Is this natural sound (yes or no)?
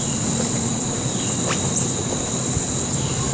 yes